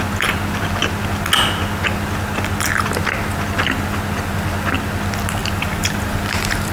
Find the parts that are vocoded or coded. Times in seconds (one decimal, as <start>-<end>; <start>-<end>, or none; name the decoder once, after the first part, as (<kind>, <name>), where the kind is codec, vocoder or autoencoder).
5.4-6.7 (vocoder, BigVGAN v2)